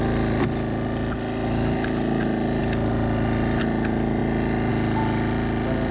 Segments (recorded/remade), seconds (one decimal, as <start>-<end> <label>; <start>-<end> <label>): 0.0-5.9 recorded